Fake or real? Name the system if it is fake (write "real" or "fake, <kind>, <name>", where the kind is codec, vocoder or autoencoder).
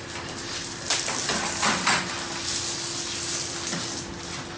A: real